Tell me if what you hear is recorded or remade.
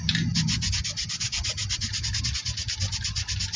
recorded